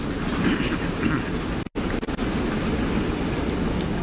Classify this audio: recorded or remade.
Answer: recorded